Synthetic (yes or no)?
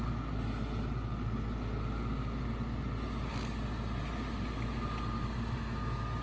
no